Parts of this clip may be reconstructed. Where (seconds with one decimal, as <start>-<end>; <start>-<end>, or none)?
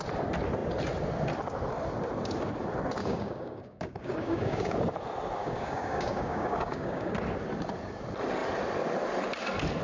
3.0-4.8; 5.4-7.1